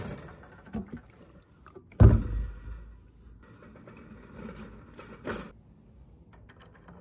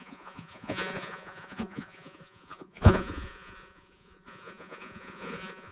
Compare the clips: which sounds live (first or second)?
first